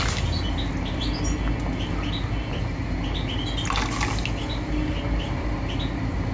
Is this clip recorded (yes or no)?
yes